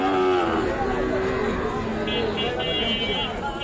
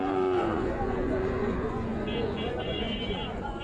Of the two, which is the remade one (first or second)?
second